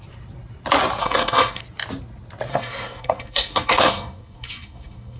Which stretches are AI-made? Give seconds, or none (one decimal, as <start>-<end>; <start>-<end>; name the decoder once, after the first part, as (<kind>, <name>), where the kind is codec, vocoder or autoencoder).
1.0-1.6 (codec, SNAC); 2.5-5.2